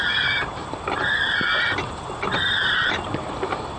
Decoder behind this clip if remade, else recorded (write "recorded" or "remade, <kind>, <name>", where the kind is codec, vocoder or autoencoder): remade, vocoder, BigVGAN v2